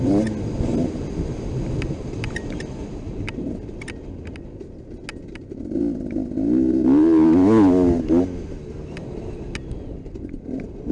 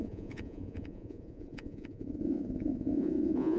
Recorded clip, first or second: first